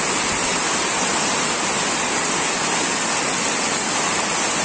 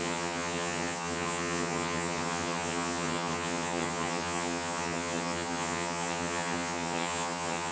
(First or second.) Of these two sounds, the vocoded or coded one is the second